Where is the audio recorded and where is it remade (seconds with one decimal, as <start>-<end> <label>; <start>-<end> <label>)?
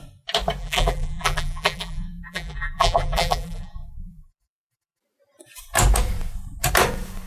0.0-0.6 recorded; 0.6-5.0 remade; 5.0-7.3 recorded